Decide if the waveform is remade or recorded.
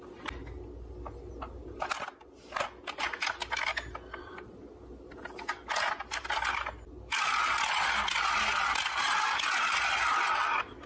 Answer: recorded